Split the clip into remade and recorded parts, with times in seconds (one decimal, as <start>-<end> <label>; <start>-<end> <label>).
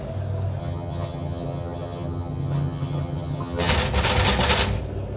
0.0-0.6 recorded; 0.6-3.7 remade; 3.7-5.2 recorded